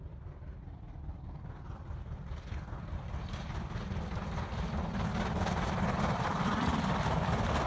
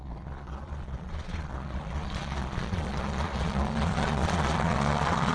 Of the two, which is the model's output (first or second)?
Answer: second